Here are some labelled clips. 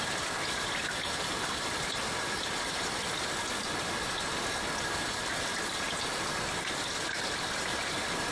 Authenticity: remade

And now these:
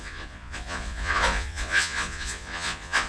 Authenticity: remade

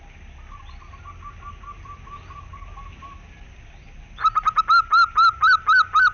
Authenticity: recorded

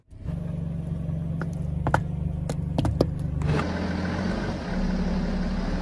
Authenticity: recorded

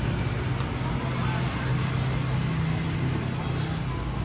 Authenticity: recorded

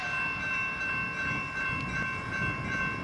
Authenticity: recorded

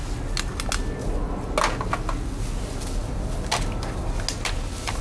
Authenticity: recorded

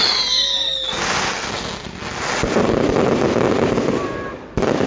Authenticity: recorded